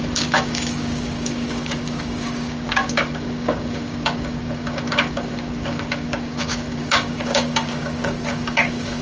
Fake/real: fake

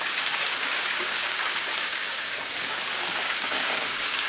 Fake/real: fake